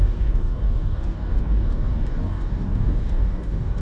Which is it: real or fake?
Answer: fake